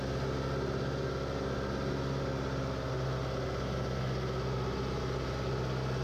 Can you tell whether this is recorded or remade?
recorded